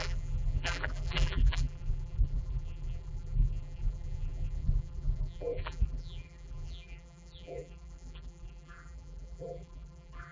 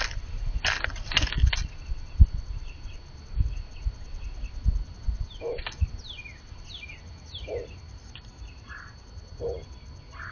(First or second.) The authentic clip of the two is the second